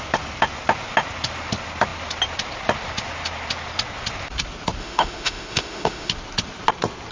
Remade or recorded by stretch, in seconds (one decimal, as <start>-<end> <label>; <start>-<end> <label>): 0.0-4.8 recorded; 4.8-6.1 remade; 6.1-7.1 recorded